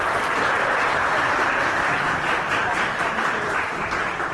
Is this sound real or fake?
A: real